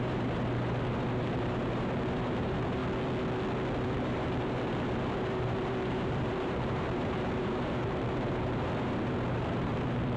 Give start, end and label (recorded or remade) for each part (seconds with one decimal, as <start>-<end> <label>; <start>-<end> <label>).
0.0-2.8 remade; 2.8-3.9 recorded; 3.9-10.2 remade